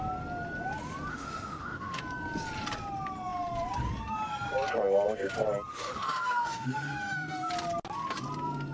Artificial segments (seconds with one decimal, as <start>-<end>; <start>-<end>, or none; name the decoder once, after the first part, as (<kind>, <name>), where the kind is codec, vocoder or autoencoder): 1.1-2.0 (autoencoder, DAC-VAE); 5.7-7.5